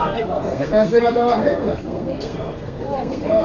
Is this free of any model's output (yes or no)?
no